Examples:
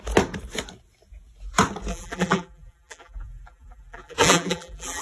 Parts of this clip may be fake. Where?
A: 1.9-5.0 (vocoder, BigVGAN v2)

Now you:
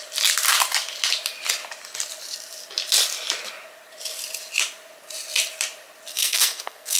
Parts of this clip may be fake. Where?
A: 6.1-7.0 (codec, SNAC)

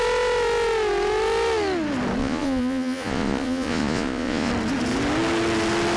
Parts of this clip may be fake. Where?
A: 2.2-4.5 (vocoder, Vocos)

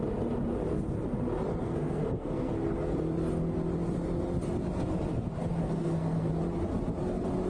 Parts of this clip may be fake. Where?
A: 1.6-2.5 (codec, SNAC); 5.6-6.3

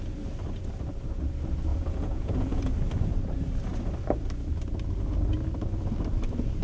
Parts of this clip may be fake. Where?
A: 1.7-2.7 (vocoder, Vocos)